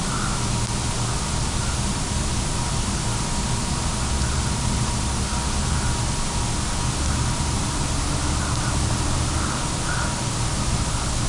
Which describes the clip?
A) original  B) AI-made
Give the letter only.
A